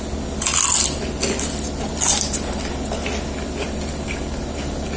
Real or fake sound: real